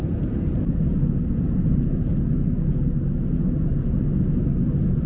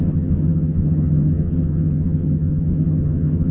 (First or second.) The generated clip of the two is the second